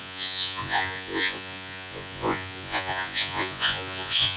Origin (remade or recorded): remade